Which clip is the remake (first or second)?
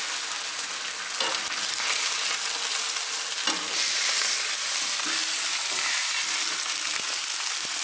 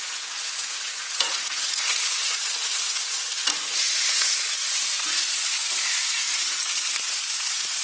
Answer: second